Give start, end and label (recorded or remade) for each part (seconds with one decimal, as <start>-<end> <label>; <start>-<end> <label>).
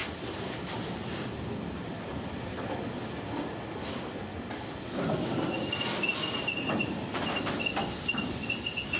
0.0-2.6 remade; 2.6-9.0 recorded